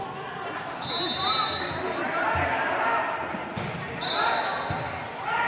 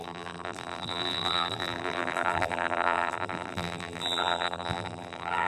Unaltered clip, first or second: first